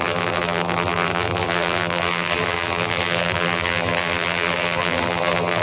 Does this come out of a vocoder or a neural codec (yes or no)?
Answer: yes